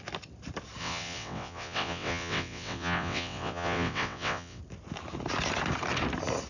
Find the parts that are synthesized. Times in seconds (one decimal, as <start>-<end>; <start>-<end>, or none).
0.8-4.6